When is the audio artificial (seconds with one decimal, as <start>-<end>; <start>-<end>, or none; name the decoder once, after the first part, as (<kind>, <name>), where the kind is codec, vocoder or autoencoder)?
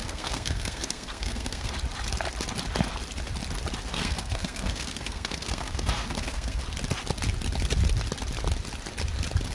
0.0-1.7 (codec, SNAC); 3.9-6.6